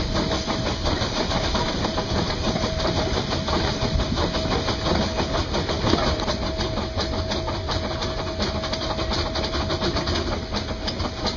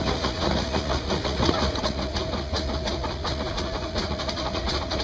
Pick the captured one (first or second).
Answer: first